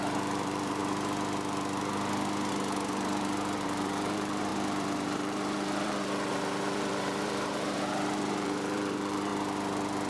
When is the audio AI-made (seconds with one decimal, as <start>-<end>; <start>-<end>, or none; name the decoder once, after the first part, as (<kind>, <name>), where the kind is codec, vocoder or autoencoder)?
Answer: 0.0-0.8 (vocoder, BigVGAN v2); 2.5-9.3